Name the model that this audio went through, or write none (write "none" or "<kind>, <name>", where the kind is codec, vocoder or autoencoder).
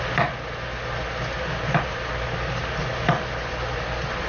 none